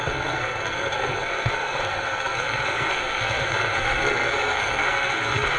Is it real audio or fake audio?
fake